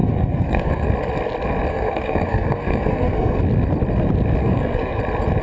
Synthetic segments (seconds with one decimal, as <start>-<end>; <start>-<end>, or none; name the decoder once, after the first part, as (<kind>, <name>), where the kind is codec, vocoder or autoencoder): 0.0-0.9 (codec, SNAC); 1.7-3.4; 4.4-5.0